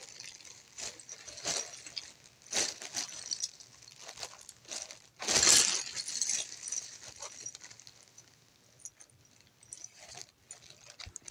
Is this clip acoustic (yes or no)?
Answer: yes